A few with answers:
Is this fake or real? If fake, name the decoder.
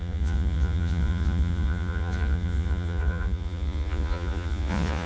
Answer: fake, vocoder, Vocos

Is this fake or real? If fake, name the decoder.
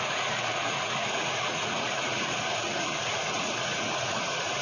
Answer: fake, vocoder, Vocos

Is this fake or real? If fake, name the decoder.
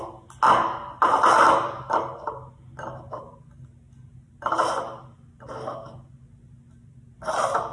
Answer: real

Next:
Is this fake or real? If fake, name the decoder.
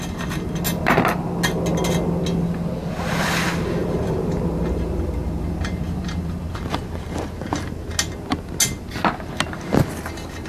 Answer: real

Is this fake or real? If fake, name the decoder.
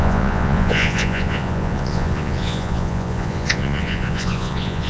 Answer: fake, vocoder, Vocos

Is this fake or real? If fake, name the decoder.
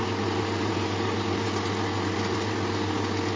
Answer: real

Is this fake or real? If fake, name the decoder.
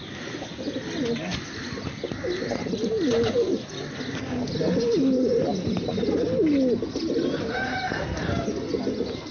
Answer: real